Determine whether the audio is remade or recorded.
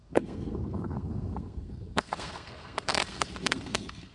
remade